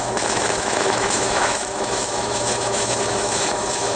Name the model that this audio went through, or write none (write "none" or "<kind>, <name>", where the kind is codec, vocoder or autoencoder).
autoencoder, DAC-VAE